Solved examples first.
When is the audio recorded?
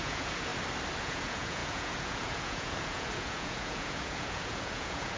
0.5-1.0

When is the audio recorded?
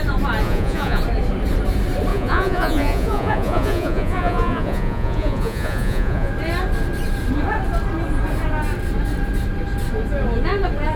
0.0-0.4; 1.0-2.1; 6.3-11.0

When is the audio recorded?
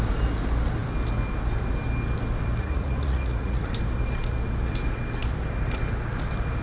0.0-2.6; 3.7-6.6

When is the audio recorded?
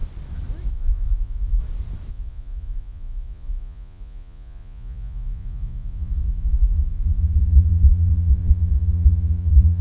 0.0-0.7; 1.6-2.1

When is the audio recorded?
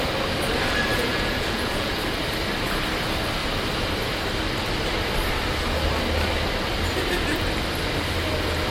0.0-0.9; 2.0-8.7